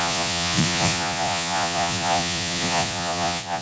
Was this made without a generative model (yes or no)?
no